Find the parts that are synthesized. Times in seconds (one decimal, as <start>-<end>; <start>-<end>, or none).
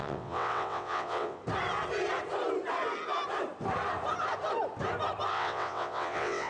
0.0-1.4; 5.3-6.5